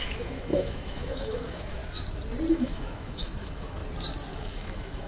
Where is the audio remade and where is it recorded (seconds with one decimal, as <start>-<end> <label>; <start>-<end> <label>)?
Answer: 0.0-1.8 remade; 1.8-2.5 recorded; 2.5-3.8 remade; 3.8-4.3 recorded; 4.3-5.1 remade